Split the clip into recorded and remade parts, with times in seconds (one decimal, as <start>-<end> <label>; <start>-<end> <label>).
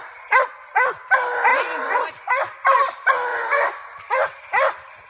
0.0-1.5 recorded; 1.5-2.1 remade; 2.1-3.3 recorded; 3.3-4.0 remade; 4.0-5.1 recorded